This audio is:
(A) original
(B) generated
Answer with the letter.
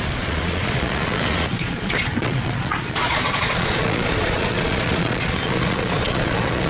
B